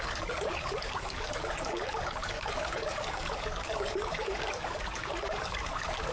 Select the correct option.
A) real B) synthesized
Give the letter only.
B